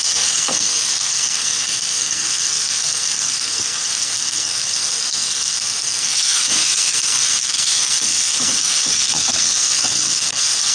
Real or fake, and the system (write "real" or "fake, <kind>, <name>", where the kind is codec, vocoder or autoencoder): fake, codec, SNAC